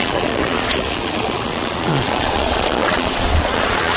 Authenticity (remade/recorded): remade